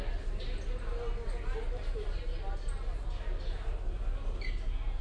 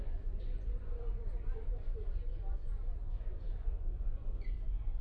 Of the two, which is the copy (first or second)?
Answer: second